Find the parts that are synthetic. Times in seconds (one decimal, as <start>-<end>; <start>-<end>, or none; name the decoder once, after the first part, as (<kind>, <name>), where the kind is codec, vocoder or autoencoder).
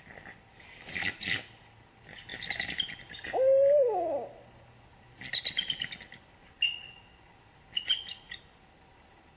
none